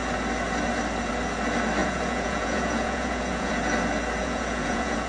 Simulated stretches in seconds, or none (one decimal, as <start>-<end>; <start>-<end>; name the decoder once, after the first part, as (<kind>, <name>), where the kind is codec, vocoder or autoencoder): 1.8-3.5 (vocoder, Vocos); 4.2-5.1